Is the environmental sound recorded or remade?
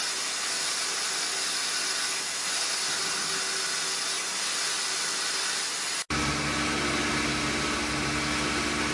recorded